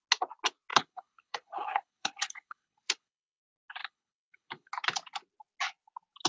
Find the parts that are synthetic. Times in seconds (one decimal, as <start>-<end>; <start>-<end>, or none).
0.7-3.4; 3.8-4.7

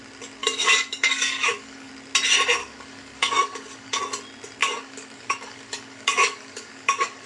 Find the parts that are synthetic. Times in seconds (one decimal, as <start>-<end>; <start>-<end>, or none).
0.4-1.9; 2.6-4.0; 4.6-7.3

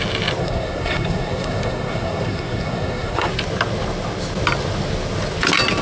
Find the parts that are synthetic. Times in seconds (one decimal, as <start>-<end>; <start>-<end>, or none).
0.4-3.3